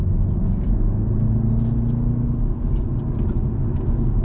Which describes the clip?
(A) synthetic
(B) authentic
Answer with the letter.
B